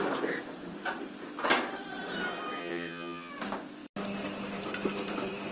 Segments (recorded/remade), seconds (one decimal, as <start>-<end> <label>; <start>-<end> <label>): 0.0-2.6 recorded; 2.6-3.3 remade; 3.3-5.5 recorded